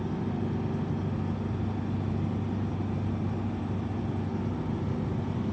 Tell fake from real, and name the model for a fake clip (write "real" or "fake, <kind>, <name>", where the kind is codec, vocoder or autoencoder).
real